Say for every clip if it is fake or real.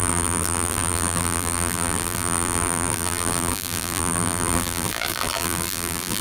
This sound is fake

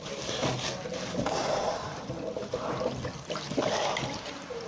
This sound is real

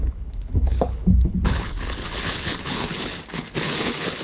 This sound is fake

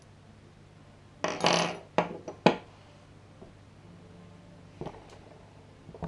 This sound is real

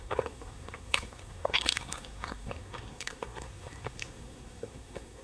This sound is fake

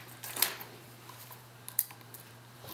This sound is fake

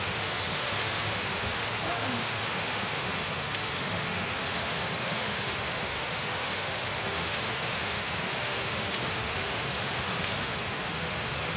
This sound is fake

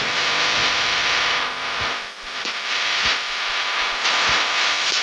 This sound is fake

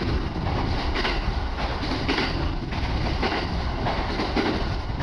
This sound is real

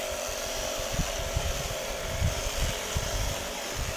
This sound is fake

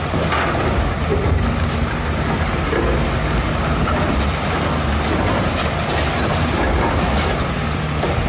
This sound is real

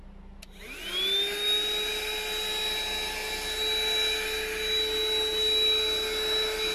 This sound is real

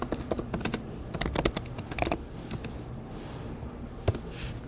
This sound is real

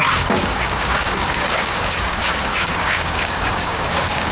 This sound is fake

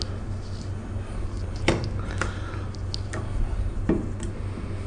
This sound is real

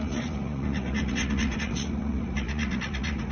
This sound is fake